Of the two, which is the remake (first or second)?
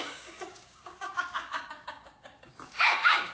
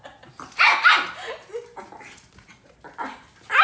first